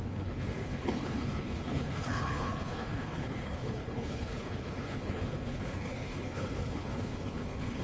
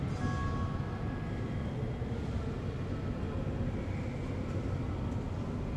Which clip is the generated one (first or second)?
first